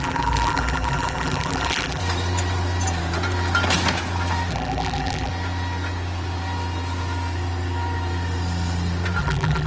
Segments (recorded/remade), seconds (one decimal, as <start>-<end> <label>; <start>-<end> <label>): 0.0-2.0 remade; 2.0-4.5 recorded; 4.5-5.3 remade; 5.3-9.2 recorded; 9.2-9.7 remade